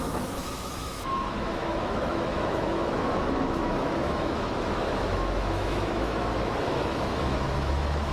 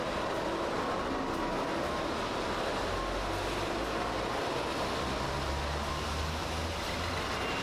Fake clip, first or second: first